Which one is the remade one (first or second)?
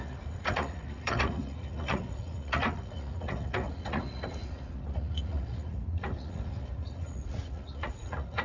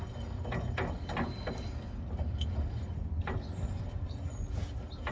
first